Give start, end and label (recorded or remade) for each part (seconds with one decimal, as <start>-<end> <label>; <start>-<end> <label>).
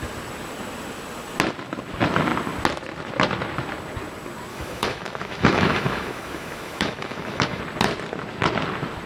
0.0-4.5 recorded; 4.5-7.6 remade; 7.6-9.1 recorded